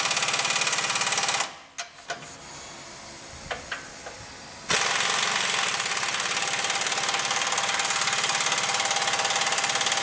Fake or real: real